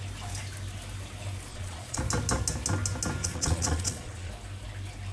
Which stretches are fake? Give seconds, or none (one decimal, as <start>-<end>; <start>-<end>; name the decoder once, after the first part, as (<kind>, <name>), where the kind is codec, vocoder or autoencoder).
1.5-2.0 (vocoder, Vocos); 3.2-4.3

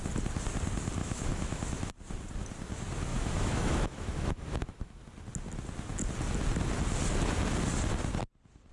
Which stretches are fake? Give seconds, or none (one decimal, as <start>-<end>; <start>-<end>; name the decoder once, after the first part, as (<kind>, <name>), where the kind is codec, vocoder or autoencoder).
1.0-1.9 (autoencoder, DAC-VAE); 3.1-5.0

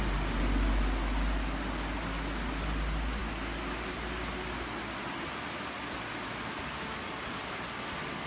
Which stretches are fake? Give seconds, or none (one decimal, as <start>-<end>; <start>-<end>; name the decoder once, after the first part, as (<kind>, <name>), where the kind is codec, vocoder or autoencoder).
none

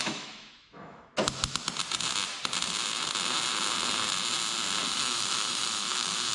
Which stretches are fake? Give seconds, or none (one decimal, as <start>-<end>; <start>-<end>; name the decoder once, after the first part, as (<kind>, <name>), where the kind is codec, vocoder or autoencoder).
0.0-1.1 (autoencoder, DAC-VAE); 4.9-6.3

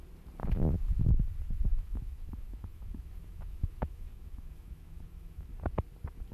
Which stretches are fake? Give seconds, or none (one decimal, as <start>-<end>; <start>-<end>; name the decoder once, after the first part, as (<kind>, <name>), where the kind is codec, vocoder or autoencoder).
0.4-1.1 (autoencoder, DAC-VAE); 1.7-5.5

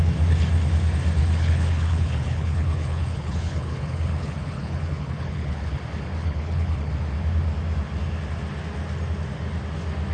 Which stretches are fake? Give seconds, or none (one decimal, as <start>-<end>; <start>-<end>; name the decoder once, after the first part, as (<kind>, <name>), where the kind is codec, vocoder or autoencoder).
1.2-5.8 (codec, HILCodec); 6.2-6.9

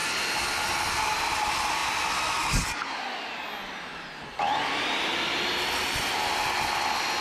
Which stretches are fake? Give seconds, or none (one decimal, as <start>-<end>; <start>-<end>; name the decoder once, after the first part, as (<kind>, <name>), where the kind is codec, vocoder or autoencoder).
none